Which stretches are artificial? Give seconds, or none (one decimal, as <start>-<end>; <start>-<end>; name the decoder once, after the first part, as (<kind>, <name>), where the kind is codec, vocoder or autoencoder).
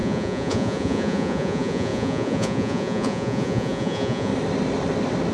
0.0-4.3 (vocoder, Vocos)